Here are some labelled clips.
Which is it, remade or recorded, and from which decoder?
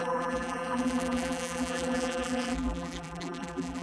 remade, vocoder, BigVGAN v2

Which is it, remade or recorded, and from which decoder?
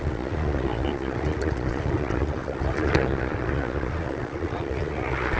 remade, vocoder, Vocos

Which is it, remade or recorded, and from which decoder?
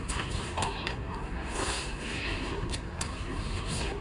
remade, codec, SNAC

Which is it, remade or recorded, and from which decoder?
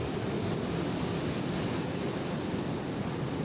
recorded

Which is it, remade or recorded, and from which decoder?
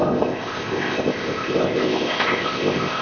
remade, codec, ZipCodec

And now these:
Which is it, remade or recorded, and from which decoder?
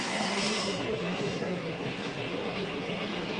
remade, codec, SNAC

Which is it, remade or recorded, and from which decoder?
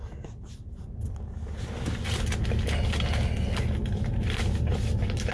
recorded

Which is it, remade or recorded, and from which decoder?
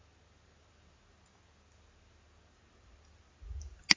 recorded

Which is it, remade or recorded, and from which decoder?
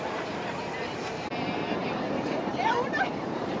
remade, vocoder, BigVGAN v2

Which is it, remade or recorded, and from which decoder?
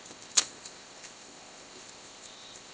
remade, codec, ZipCodec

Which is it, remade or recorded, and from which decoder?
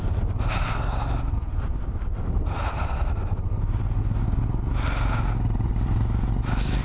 recorded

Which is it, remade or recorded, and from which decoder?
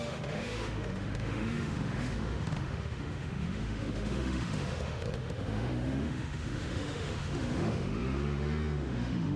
remade, autoencoder, DAC-VAE